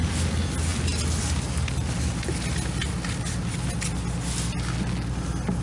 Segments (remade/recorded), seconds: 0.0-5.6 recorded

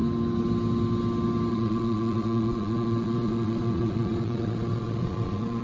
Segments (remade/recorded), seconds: 0.0-1.5 recorded; 1.5-5.6 remade

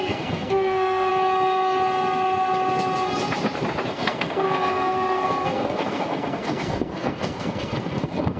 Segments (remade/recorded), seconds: 0.0-1.1 remade; 1.1-3.9 recorded; 3.9-8.4 remade

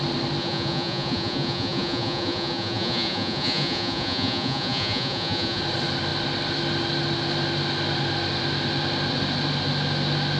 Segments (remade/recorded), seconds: 0.0-0.4 recorded; 0.4-5.6 remade; 5.6-10.4 recorded

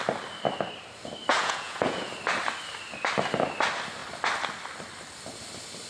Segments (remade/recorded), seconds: 0.0-1.3 recorded; 1.3-2.1 remade; 2.1-5.9 recorded

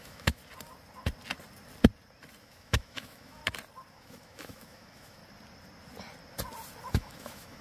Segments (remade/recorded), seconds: 0.0-0.4 remade; 0.4-2.4 recorded; 2.4-3.4 remade; 3.4-3.9 recorded; 3.9-5.2 remade; 5.2-6.9 recorded; 6.9-7.6 remade

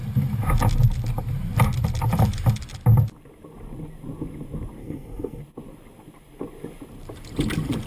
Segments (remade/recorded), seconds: 0.0-4.8 recorded; 4.8-5.4 remade; 5.4-7.9 recorded